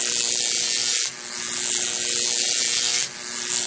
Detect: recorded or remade recorded